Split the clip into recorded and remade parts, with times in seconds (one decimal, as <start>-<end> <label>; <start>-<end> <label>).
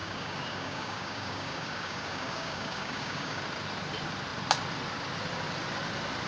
0.0-3.4 remade; 3.4-6.3 recorded